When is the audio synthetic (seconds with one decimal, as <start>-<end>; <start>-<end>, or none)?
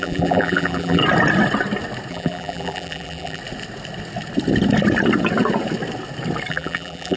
0.0-1.0; 2.1-3.4; 6.5-7.2